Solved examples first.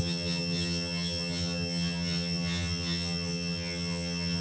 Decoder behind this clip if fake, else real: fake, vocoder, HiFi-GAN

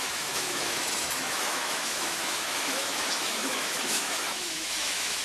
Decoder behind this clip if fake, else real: fake, autoencoder, DAC-VAE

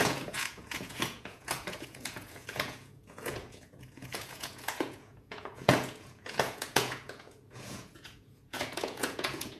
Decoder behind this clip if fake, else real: fake, vocoder, Vocos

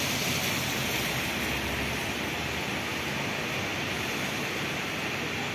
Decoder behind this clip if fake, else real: real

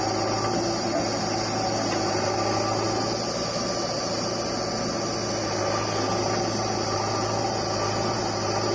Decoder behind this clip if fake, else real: real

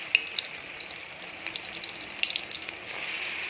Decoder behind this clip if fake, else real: real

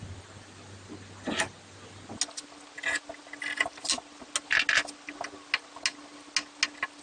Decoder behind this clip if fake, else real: real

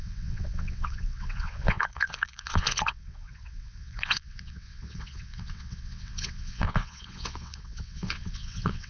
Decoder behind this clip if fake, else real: fake, vocoder, WaveNeXt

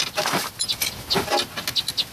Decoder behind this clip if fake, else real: real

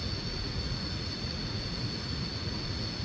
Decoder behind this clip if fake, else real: fake, vocoder, Vocos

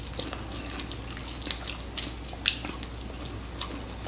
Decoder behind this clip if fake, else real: real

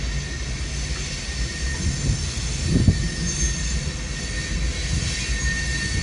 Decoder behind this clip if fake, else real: real